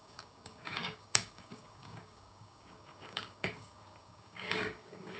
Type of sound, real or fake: fake